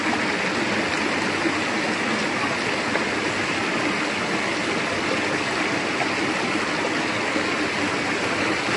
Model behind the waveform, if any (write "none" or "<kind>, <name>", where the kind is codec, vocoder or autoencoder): none